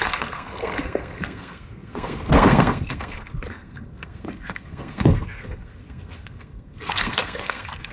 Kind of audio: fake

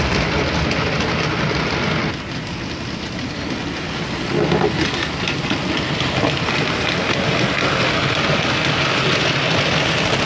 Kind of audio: real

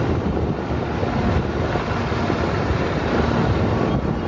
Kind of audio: real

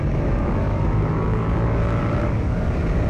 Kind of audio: fake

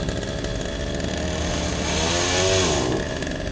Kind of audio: real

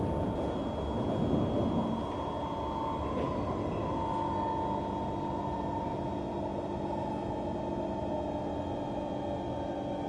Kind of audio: real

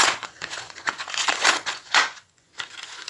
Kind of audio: fake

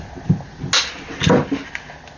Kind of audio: real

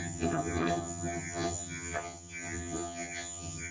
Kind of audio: fake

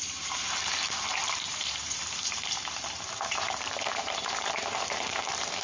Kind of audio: fake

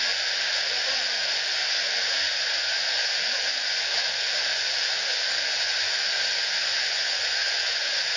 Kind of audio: fake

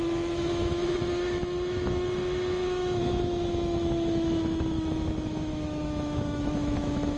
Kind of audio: fake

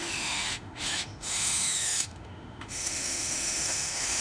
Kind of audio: fake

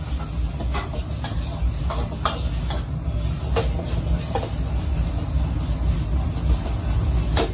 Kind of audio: real